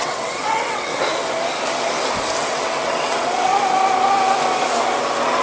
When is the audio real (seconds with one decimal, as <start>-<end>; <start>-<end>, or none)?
0.9-2.4; 3.5-5.4